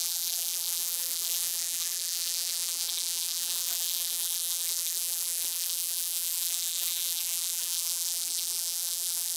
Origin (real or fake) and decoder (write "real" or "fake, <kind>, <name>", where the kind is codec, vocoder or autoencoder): fake, vocoder, BigVGAN v2